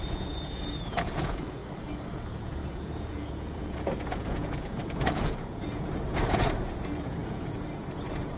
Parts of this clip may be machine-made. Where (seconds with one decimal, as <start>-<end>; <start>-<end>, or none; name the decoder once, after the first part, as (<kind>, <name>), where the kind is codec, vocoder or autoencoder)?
0.0-1.6 (vocoder, Vocos); 2.2-8.4